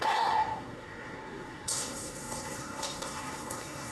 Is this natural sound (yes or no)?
no